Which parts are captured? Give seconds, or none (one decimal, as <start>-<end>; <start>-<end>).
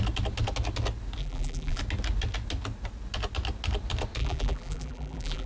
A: 0.0-1.2; 1.8-4.2